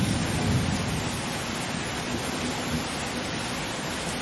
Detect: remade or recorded recorded